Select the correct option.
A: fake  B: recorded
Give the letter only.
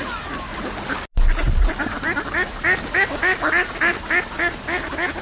B